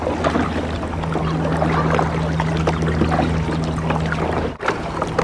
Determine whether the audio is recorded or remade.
recorded